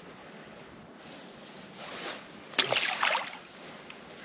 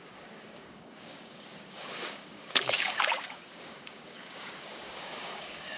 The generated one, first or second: second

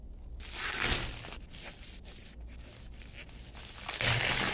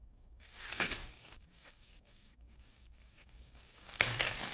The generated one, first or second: second